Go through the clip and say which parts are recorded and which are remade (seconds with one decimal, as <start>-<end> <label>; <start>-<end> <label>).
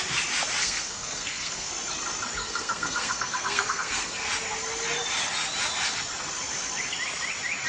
0.0-0.6 recorded; 0.6-1.7 remade; 1.7-2.4 recorded; 2.4-4.2 remade; 4.2-7.7 recorded